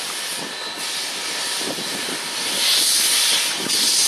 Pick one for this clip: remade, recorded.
recorded